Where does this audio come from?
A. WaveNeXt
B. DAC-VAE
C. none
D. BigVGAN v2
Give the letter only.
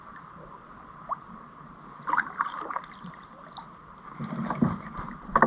C